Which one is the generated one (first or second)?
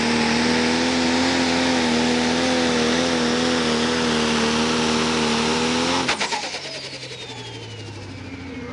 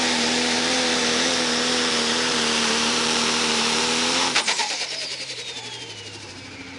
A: second